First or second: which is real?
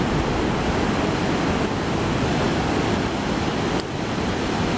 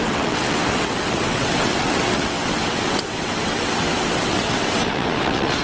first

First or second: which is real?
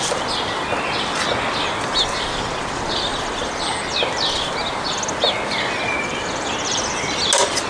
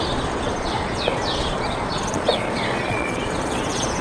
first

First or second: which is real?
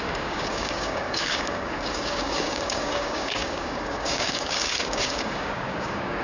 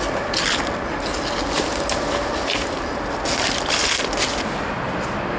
second